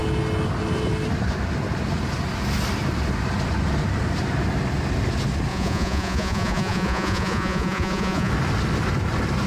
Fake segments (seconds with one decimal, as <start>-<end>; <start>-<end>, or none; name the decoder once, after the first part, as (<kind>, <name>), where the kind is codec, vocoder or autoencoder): 5.5-8.3 (vocoder, Vocos)